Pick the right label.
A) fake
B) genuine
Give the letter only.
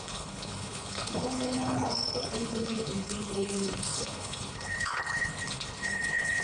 A